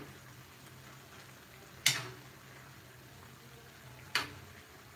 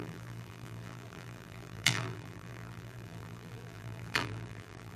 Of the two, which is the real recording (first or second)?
first